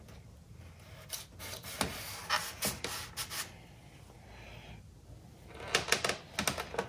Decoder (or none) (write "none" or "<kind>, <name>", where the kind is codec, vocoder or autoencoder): none